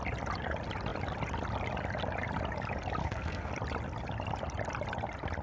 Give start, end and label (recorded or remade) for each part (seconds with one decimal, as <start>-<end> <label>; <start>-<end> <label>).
0.0-3.0 recorded; 3.0-3.5 remade; 3.5-5.4 recorded